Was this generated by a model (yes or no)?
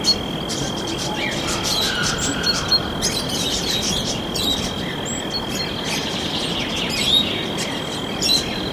no